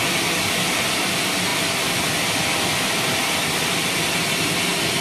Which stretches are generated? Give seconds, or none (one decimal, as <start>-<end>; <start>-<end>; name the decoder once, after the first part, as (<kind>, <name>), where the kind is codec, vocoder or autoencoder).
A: none